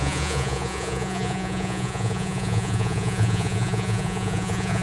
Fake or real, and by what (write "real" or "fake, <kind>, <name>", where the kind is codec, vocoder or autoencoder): fake, vocoder, Vocos